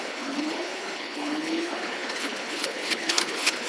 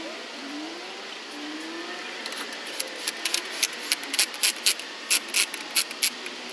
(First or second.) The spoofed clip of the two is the first